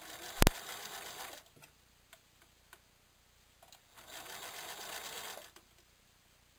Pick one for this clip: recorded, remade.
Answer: recorded